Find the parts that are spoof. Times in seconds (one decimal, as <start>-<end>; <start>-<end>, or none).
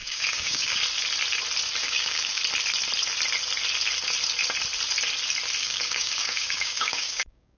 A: 0.0-0.8; 1.8-2.4; 5.6-7.6